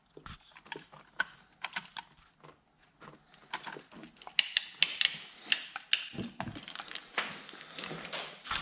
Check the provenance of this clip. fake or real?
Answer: real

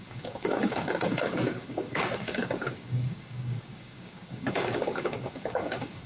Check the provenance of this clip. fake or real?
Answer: fake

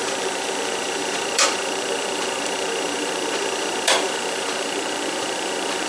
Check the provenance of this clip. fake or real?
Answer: fake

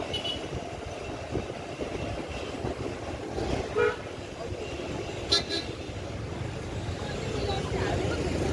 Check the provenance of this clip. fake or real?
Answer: real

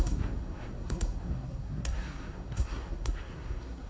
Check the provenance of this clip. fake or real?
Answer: fake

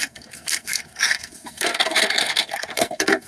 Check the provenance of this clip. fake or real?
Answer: fake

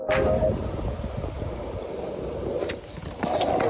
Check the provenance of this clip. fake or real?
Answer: real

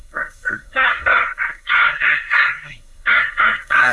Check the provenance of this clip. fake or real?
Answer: fake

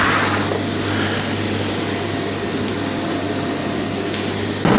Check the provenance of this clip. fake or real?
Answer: real